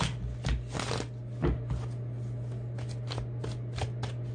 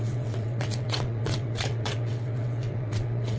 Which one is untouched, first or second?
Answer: first